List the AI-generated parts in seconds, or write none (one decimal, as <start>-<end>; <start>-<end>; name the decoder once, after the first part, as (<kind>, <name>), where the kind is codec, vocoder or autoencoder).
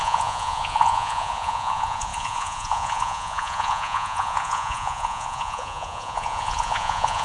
0.0-7.2 (vocoder, Vocos)